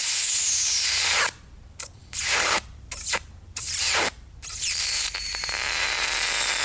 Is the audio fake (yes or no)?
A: yes